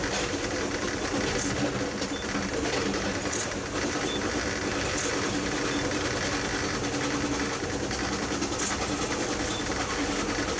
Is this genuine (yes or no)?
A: yes